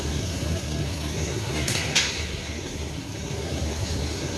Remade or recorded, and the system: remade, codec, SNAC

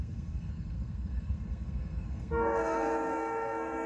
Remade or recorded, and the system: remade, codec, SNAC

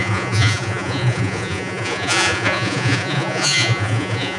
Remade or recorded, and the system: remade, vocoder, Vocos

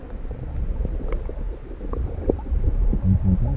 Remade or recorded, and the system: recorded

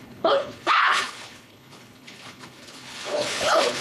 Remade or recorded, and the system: remade, codec, HILCodec